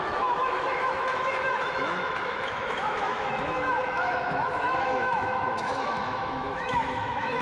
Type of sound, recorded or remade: remade